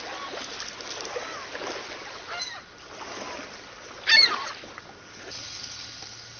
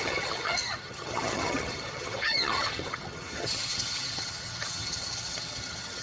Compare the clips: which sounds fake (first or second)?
second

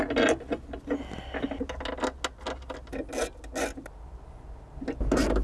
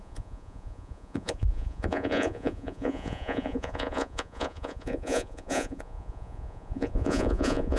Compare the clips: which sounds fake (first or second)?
second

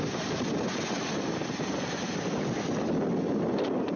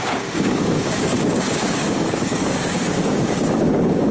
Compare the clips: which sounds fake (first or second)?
second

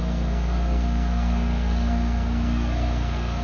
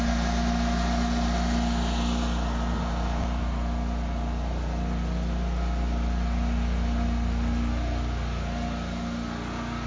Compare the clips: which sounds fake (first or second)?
first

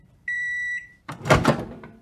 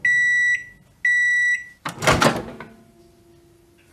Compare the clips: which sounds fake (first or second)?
first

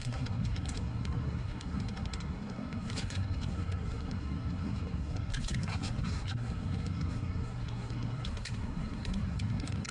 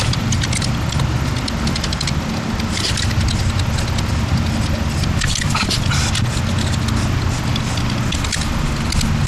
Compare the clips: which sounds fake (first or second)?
first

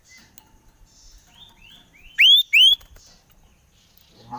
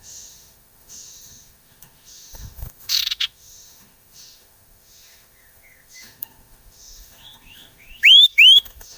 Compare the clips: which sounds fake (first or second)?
second